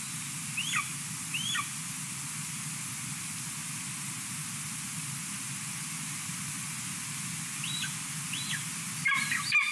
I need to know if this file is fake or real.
real